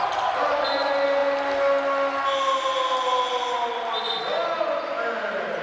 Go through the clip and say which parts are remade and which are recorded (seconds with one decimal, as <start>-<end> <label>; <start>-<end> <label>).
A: 0.0-5.6 recorded